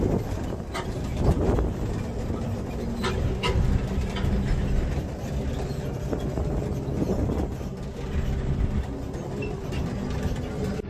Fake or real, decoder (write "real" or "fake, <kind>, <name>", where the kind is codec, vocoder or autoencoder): real